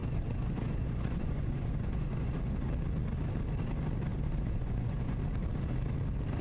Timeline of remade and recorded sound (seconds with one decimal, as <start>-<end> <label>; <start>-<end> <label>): 0.0-2.4 remade; 2.4-4.1 recorded; 4.1-5.2 remade; 5.2-6.4 recorded